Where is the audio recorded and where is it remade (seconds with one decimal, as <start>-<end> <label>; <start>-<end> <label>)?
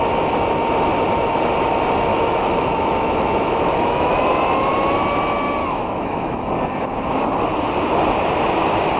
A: 0.0-2.1 recorded; 2.1-4.2 remade; 4.2-5.6 recorded; 5.6-6.5 remade; 6.5-9.0 recorded